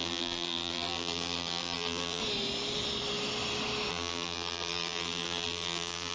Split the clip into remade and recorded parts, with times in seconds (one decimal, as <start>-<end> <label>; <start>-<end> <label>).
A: 0.0-2.2 remade; 2.2-3.9 recorded; 3.9-6.1 remade